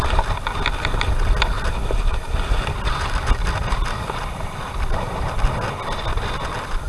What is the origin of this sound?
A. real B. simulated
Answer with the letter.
A